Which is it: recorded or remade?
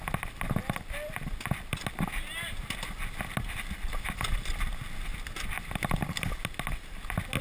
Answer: recorded